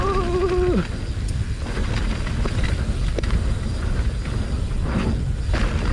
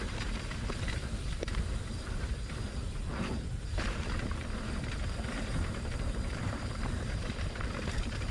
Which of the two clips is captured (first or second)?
first